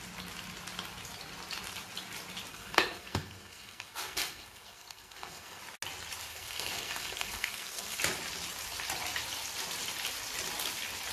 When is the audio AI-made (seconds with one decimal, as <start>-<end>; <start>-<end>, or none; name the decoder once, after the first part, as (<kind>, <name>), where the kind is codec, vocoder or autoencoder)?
2.5-5.6 (codec, SNAC); 6.3-8.0